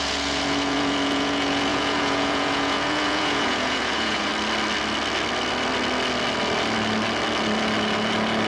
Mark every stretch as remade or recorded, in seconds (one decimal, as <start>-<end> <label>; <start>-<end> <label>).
0.0-4.3 remade; 4.3-8.5 recorded